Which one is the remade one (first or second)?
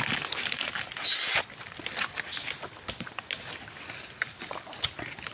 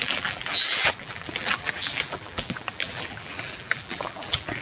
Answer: second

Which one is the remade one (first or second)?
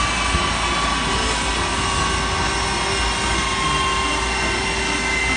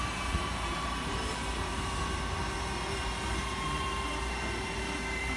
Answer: second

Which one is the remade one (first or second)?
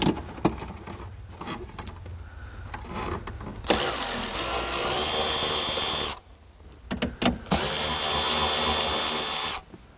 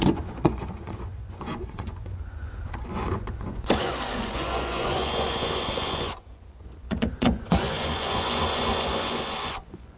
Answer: second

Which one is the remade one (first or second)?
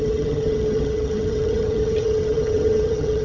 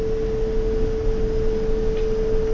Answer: first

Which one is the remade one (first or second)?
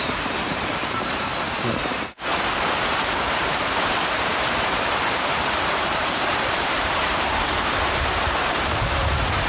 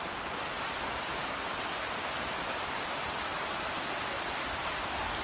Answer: first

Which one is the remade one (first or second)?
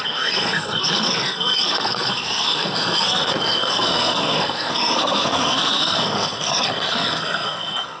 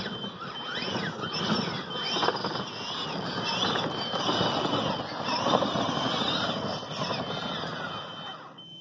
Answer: first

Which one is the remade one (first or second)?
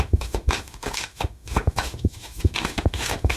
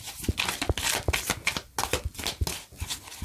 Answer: first